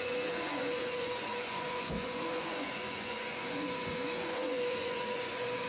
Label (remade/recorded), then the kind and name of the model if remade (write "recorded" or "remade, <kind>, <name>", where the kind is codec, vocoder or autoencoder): remade, vocoder, Vocos